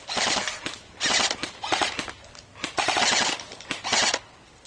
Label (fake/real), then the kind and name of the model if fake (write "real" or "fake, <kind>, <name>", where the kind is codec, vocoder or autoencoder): real